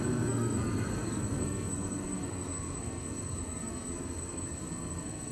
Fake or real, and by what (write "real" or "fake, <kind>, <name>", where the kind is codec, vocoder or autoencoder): fake, codec, SNAC